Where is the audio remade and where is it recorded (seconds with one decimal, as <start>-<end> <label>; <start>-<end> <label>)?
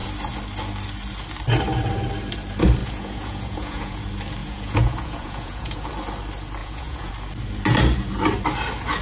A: 0.0-2.8 recorded; 2.8-4.0 remade; 4.0-4.4 recorded; 4.4-5.9 remade; 5.9-6.6 recorded; 6.6-7.1 remade; 7.1-9.0 recorded